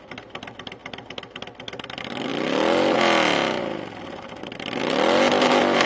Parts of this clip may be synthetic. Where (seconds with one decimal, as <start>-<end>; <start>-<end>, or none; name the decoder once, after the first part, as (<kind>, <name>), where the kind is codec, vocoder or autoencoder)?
none